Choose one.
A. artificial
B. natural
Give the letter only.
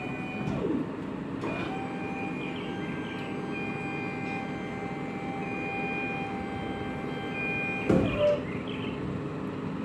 B